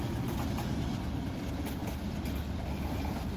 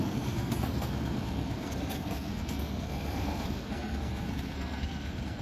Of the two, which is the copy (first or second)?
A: second